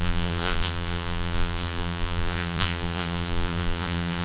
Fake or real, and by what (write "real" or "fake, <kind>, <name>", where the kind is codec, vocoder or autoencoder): fake, vocoder, BigVGAN v2